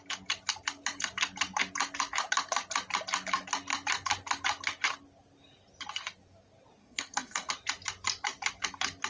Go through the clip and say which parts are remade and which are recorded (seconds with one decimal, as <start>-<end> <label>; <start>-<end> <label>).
0.0-6.8 recorded; 6.8-7.5 remade; 7.5-9.1 recorded